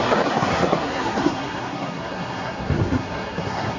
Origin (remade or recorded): remade